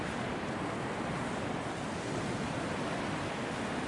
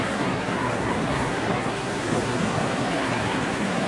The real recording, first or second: first